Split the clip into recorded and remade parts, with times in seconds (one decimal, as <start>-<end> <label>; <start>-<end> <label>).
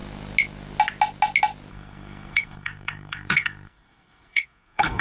0.0-1.7 recorded; 1.7-5.0 remade